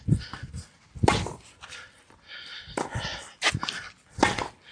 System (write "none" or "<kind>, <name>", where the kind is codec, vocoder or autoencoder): none